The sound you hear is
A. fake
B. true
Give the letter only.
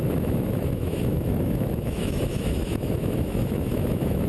A